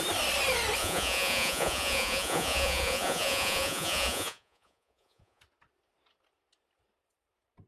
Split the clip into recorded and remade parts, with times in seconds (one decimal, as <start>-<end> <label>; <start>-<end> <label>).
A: 0.0-0.8 recorded; 0.8-5.4 remade; 5.4-7.7 recorded